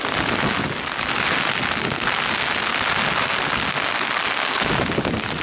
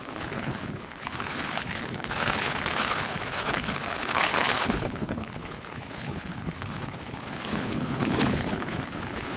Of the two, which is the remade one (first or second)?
second